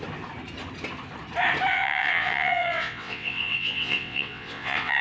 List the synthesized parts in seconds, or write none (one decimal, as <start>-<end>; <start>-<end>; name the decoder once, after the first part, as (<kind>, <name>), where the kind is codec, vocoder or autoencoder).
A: 1.7-5.0 (vocoder, WaveNeXt)

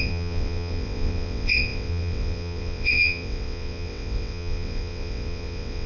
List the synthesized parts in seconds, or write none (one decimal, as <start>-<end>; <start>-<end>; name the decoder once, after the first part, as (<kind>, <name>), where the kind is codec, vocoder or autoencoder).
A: 0.0-5.9 (vocoder, WaveNeXt)

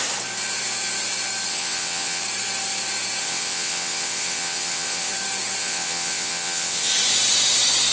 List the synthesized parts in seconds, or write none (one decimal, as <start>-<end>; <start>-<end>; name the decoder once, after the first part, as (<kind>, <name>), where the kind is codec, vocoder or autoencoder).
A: 1.5-2.2 (vocoder, WaveNeXt); 3.2-5.1; 5.6-6.9

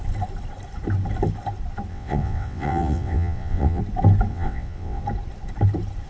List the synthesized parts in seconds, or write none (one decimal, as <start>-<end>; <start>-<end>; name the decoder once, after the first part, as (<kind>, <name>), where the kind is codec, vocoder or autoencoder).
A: 1.9-3.8 (vocoder, WaveNeXt); 4.3-5.0

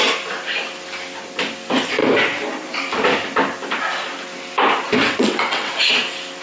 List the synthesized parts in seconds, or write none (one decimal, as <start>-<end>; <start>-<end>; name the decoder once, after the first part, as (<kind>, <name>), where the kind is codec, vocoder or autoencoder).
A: 5.0-5.7 (vocoder, WaveNeXt)

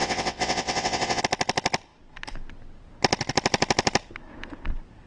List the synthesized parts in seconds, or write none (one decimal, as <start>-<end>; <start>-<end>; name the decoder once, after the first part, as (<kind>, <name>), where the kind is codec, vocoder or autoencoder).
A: 0.0-1.2 (vocoder, WaveNeXt)